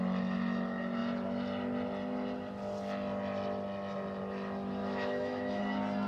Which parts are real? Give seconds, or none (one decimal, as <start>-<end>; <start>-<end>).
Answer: 0.0-4.8; 5.6-6.1